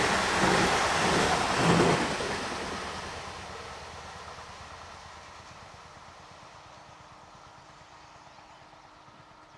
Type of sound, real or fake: real